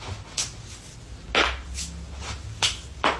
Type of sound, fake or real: real